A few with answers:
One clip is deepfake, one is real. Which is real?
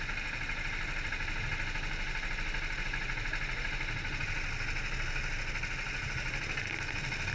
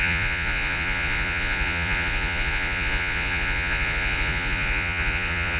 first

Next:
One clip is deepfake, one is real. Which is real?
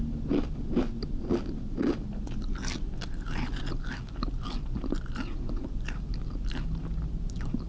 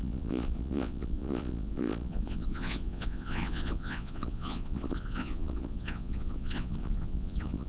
first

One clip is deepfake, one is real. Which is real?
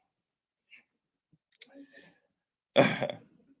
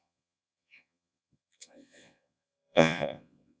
first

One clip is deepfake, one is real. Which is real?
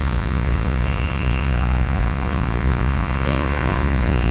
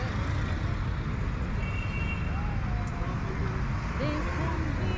second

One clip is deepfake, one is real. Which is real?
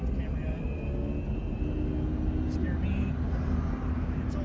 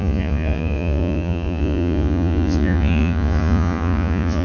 first